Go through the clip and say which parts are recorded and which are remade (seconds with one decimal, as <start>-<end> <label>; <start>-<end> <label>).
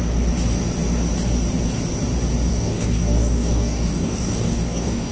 0.0-2.5 recorded; 2.5-5.1 remade